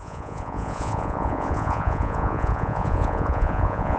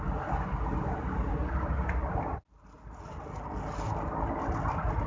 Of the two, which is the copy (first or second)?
first